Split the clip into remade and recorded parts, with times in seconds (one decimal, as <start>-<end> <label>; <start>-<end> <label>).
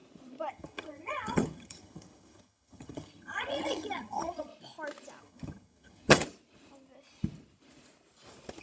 0.0-0.5 recorded; 0.5-4.5 remade; 4.5-5.2 recorded; 5.2-6.2 remade; 6.2-8.6 recorded